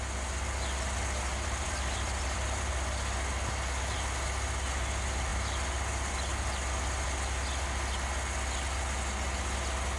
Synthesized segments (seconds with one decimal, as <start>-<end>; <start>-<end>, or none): 1.3-2.7